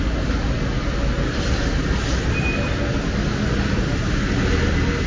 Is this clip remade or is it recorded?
recorded